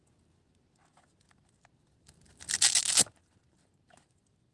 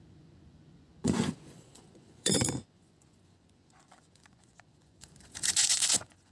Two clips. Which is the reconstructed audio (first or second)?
second